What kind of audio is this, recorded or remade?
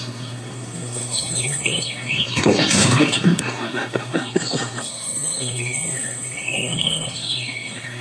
remade